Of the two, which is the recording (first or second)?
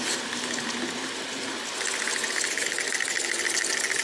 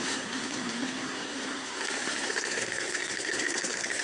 first